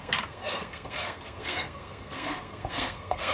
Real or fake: fake